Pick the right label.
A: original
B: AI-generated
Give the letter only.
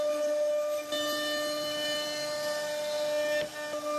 A